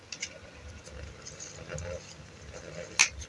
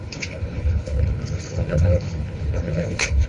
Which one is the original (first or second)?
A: first